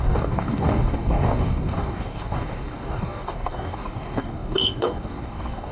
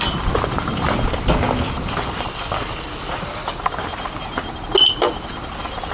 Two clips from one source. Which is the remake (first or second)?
first